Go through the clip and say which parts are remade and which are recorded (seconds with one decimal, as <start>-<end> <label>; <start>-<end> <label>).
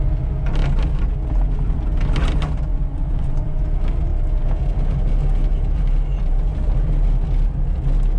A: 0.0-2.7 recorded; 2.7-3.6 remade; 3.6-8.2 recorded